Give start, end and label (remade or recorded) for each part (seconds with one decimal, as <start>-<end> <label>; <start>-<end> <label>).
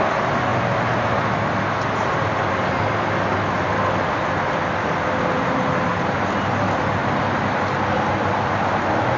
0.0-9.2 recorded